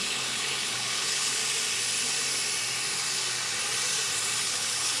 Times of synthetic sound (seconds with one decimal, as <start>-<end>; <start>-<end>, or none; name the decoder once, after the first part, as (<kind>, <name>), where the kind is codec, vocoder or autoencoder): 0.0-1.4 (codec, HILCodec); 4.4-5.0